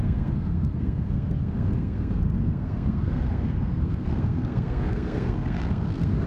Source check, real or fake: fake